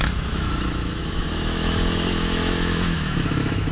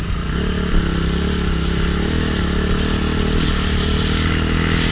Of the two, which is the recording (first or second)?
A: second